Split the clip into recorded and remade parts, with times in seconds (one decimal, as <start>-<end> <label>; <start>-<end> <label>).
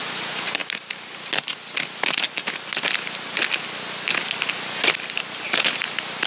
0.0-6.3 recorded